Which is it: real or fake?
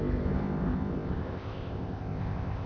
fake